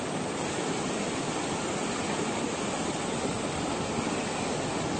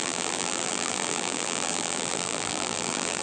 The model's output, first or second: second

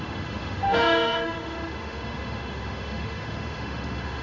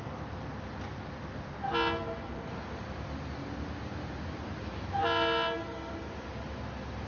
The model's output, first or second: first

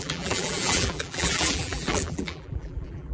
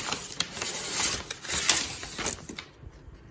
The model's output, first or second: first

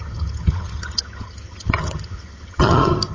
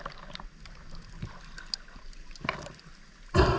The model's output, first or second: first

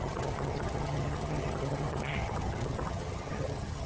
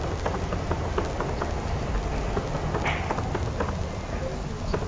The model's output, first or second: first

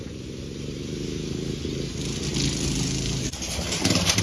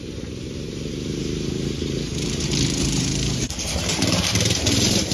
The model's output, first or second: second